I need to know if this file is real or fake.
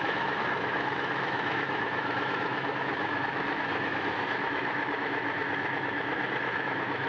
fake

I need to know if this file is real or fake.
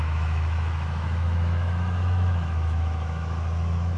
fake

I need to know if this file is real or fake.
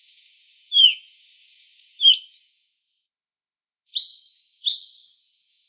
fake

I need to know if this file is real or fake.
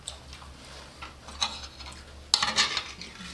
real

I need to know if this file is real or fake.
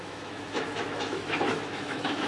fake